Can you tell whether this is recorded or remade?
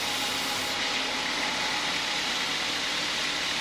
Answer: recorded